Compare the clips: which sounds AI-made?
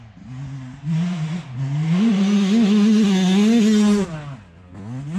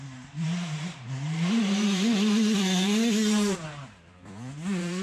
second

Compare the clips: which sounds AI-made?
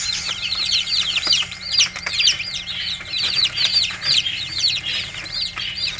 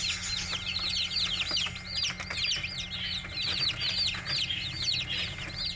first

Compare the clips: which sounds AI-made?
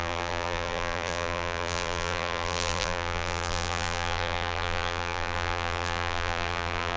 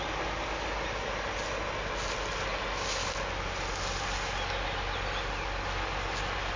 first